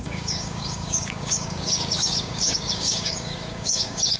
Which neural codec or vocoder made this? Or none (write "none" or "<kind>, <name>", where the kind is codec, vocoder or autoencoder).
codec, DAC